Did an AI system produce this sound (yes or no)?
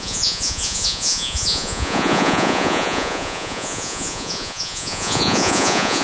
yes